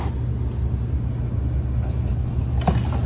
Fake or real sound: real